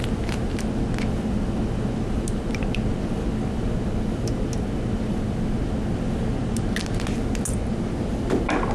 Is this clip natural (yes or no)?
yes